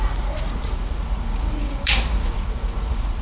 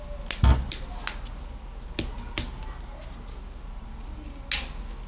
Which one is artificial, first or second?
first